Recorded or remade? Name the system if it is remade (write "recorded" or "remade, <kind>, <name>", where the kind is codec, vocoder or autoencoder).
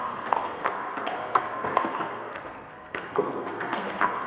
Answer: remade, codec, SNAC